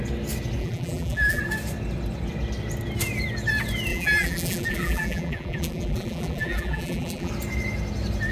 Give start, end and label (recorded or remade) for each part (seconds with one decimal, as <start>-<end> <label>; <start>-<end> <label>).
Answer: 0.0-0.6 recorded; 0.6-1.4 remade; 1.4-3.9 recorded; 3.9-7.3 remade; 7.3-8.3 recorded